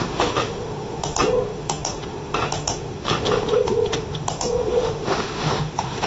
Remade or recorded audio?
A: remade